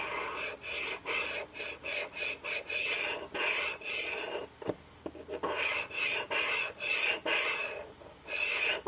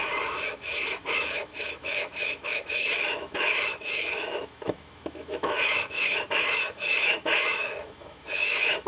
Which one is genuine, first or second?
first